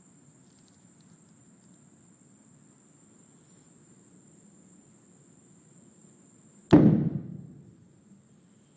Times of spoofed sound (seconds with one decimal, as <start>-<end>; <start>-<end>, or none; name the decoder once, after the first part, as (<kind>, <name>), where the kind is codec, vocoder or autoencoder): none